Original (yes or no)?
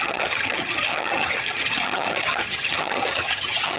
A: no